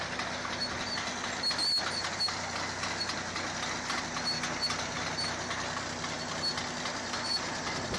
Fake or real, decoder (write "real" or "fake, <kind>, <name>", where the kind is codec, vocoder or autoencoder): real